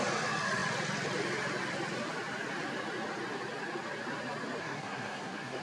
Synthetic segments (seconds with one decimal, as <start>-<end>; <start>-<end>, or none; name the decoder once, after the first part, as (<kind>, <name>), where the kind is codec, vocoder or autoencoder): 4.6-5.6 (codec, SNAC)

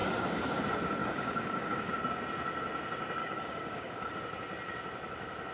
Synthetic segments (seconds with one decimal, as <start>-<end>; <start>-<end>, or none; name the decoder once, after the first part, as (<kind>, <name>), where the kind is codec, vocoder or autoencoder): 0.0-0.6 (codec, DAC); 1.0-1.9; 3.2-4.1

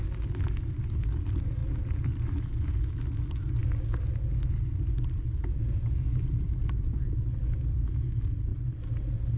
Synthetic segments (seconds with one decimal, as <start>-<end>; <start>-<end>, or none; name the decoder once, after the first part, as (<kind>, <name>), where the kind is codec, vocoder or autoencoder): none

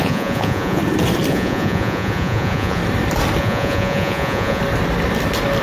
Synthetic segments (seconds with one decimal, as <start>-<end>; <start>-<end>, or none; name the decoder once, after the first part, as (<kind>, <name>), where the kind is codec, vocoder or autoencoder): 0.0-0.8 (vocoder, Vocos); 1.3-2.8; 3.4-4.6

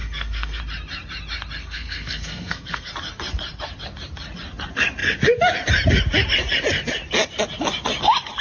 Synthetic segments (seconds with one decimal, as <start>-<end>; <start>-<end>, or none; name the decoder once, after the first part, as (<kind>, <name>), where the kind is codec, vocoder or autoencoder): 0.0-0.6 (codec, SNAC); 1.6-2.9

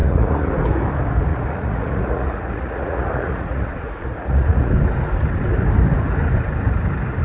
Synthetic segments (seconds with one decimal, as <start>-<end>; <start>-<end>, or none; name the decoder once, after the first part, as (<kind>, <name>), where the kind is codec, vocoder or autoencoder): 0.0-0.5 (vocoder, Vocos); 1.3-4.7

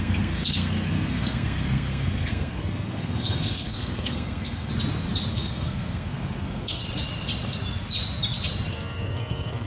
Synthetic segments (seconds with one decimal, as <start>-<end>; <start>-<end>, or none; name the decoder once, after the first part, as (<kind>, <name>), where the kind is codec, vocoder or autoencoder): 0.0-4.7 (codec, SNAC); 5.3-6.8; 8.7-9.7